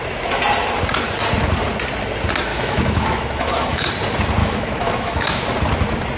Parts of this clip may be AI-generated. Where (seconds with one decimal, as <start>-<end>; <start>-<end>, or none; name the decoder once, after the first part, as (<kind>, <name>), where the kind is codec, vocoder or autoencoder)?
2.5-3.9 (autoencoder, DAC-VAE); 4.4-5.4